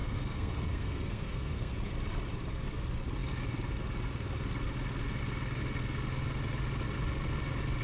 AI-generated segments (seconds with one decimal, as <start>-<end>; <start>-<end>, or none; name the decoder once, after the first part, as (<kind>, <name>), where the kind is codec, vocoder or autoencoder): 0.0-1.7 (codec, SNAC)